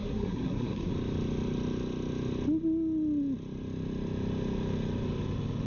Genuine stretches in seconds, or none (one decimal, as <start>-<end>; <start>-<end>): 0.9-5.7